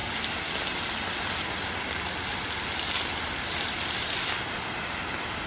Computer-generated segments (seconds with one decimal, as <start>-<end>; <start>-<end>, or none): none